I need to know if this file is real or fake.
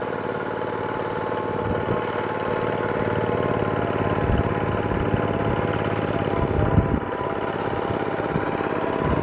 real